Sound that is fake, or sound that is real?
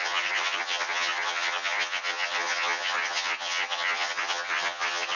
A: fake